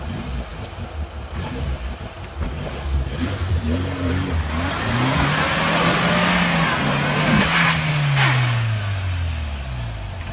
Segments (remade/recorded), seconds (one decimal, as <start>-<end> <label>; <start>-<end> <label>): 0.0-0.5 recorded; 0.5-4.2 remade; 4.2-10.3 recorded